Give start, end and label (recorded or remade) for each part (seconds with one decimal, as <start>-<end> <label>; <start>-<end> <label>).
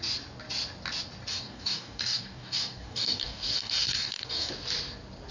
0.0-1.3 recorded; 1.3-4.5 remade; 4.5-5.3 recorded